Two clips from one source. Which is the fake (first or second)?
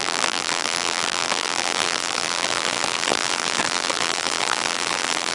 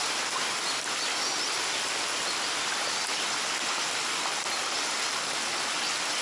first